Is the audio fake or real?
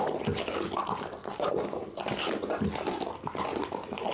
real